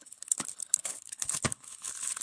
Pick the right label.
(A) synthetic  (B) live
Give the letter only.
A